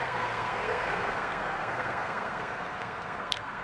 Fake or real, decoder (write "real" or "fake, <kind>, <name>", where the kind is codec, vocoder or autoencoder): fake, codec, SNAC